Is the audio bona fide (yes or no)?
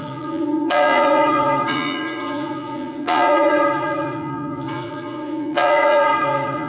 no